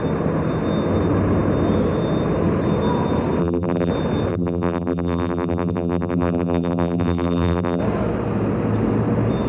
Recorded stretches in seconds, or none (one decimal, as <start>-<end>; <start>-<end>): 0.0-3.4; 3.9-4.3; 7.8-9.5